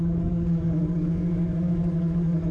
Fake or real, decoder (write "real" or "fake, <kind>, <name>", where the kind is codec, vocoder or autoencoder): fake, codec, DAC